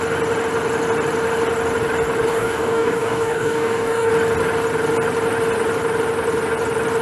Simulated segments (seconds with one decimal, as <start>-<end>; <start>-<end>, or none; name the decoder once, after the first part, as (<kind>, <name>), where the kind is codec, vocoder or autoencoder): 2.3-4.1 (codec, DAC)